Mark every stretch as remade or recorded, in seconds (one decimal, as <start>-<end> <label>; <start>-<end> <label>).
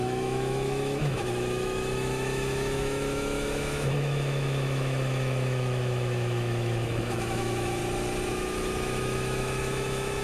0.0-7.8 remade; 7.8-8.3 recorded; 8.3-10.2 remade